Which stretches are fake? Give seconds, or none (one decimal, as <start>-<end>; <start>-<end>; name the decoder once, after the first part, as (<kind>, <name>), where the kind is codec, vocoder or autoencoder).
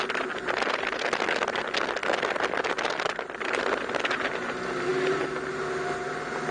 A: none